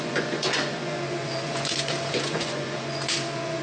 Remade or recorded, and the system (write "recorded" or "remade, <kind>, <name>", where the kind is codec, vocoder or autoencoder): remade, vocoder, Vocos